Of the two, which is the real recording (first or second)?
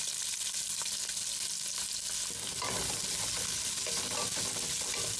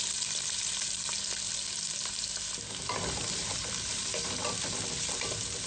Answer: first